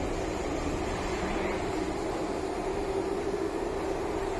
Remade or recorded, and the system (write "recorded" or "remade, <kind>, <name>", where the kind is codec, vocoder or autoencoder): recorded